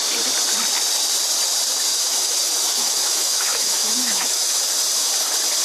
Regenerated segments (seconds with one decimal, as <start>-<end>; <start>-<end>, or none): 1.9-4.6